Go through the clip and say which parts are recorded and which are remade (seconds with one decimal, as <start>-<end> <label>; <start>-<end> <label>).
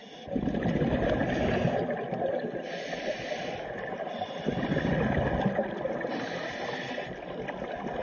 0.0-8.0 recorded